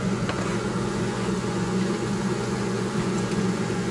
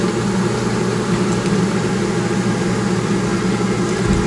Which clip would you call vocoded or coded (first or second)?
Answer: first